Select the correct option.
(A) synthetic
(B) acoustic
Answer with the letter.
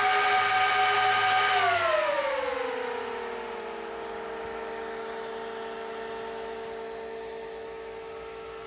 B